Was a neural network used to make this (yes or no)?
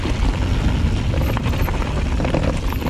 no